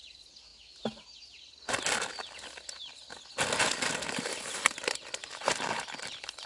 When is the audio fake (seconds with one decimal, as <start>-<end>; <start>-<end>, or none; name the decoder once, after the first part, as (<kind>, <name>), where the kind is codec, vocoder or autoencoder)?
0.0-0.5 (vocoder, BigVGAN v2); 4.1-6.5